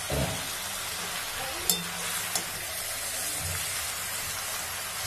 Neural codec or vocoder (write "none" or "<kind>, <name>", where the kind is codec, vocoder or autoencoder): none